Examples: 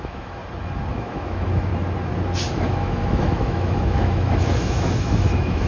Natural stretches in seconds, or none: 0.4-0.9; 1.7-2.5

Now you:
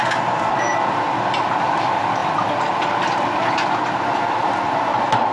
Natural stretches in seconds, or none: 0.0-5.3

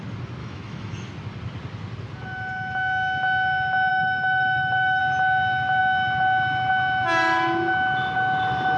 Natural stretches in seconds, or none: 0.0-0.4; 1.1-3.9; 5.0-8.8